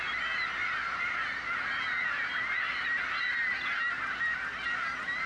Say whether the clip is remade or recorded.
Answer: recorded